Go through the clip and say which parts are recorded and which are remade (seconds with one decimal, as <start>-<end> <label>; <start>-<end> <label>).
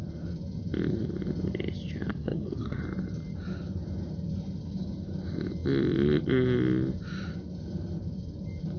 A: 0.0-2.1 recorded; 2.1-2.8 remade; 2.8-8.8 recorded